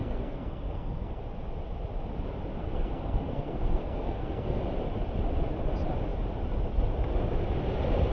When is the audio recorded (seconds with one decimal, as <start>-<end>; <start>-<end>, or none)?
1.2-2.6; 4.6-8.1